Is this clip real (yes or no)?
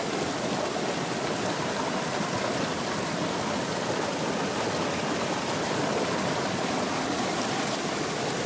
yes